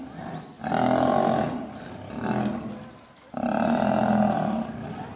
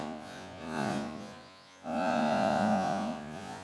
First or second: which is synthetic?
second